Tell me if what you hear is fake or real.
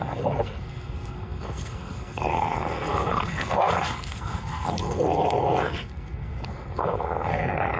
fake